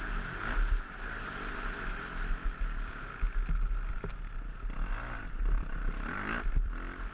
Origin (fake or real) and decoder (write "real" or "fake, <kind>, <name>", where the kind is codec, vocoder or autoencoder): real